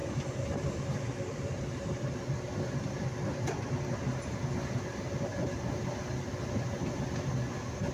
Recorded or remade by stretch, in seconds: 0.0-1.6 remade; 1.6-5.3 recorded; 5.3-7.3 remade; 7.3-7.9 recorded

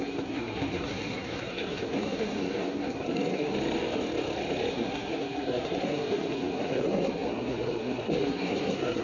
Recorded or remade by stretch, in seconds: 0.0-3.5 remade; 3.5-4.7 recorded; 4.7-9.0 remade

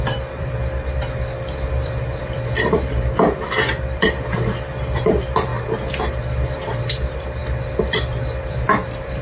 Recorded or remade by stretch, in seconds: 0.0-5.5 remade; 5.5-6.2 recorded; 6.2-7.4 remade; 7.4-8.4 recorded; 8.4-9.2 remade

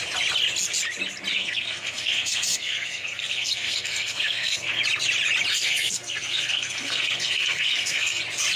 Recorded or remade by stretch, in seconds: 0.0-1.3 recorded; 1.3-4.8 remade; 4.8-5.5 recorded; 5.5-8.2 remade; 8.2-8.6 recorded

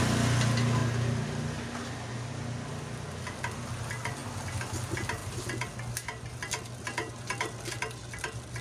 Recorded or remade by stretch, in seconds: 0.0-8.6 recorded

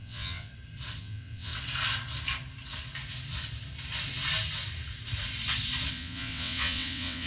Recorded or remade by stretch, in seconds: 0.0-0.5 remade; 0.5-1.0 recorded; 1.0-1.5 remade; 1.5-5.9 recorded; 5.9-7.3 remade